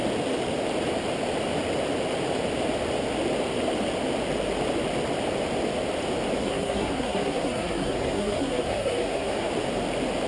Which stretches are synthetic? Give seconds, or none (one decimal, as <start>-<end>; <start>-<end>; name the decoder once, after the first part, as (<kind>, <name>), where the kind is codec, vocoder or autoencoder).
6.4-9.5 (codec, SNAC)